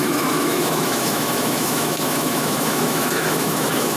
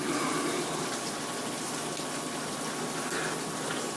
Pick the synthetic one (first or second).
first